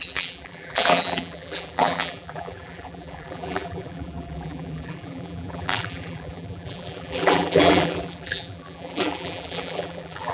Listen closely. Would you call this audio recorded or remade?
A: remade